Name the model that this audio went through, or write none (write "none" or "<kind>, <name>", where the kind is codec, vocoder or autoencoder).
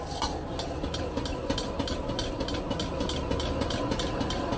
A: none